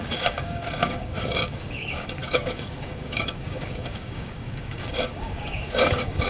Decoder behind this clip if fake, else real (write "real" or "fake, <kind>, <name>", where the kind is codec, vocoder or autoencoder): fake, codec, DAC